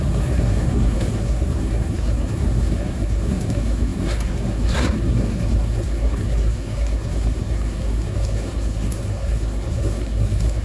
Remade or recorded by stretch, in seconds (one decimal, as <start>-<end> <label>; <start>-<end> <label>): 0.0-10.6 remade